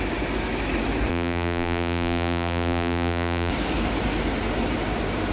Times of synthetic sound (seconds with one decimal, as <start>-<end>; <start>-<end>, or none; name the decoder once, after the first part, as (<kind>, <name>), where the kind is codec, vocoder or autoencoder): 1.1-3.5 (vocoder, BigVGAN v2)